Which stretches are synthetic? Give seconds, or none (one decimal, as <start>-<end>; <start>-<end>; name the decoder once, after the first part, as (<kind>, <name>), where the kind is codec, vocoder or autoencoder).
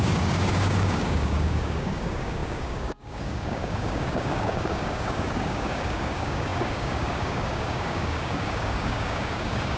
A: 0.0-9.8 (codec, DAC)